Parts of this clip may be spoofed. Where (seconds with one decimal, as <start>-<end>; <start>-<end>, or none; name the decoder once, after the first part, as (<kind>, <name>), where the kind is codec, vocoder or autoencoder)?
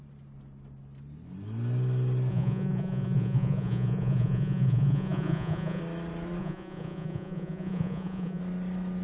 2.3-5.8 (vocoder, Vocos); 6.4-8.4